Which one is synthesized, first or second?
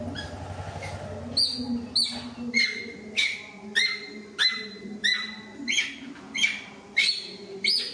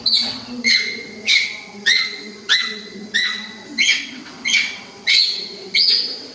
second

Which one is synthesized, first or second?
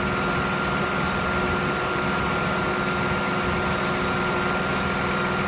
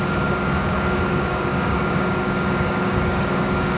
second